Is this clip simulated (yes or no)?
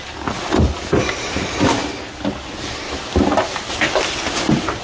no